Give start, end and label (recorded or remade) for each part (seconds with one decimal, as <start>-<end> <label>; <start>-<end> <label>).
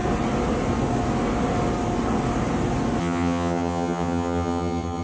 0.0-3.0 recorded; 3.0-5.0 remade